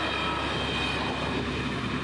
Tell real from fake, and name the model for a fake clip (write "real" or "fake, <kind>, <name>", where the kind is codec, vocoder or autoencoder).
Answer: real